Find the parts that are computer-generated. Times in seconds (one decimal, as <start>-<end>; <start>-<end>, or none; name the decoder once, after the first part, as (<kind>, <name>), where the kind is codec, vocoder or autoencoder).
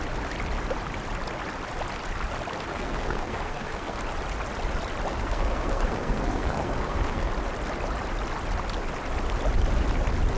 2.7-4.0 (codec, SNAC); 5.1-7.3